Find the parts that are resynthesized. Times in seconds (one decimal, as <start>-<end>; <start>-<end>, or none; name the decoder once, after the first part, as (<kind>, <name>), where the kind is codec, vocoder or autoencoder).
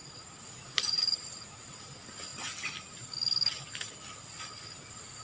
0.0-1.5 (vocoder, BigVGAN v2)